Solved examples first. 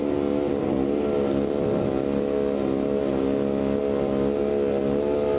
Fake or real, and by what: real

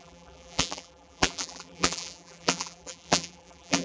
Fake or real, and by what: fake, vocoder, BigVGAN v2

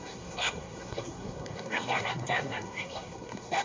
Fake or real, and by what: fake, codec, SNAC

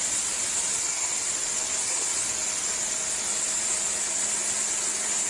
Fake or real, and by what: real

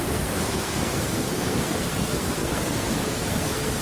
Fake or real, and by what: fake, codec, SNAC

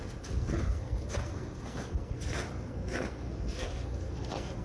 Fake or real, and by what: fake, codec, SNAC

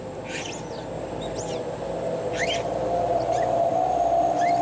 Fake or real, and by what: real